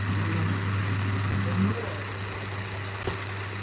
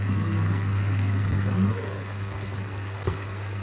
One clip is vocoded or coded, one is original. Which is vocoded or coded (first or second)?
second